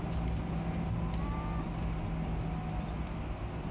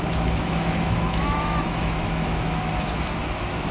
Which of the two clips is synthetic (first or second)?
second